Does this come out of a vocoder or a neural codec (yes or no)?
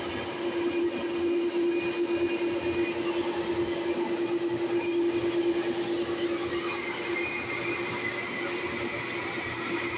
no